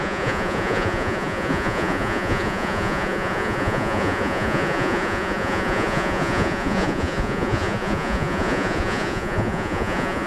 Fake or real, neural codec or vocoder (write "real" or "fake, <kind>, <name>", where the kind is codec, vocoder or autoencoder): fake, vocoder, Vocos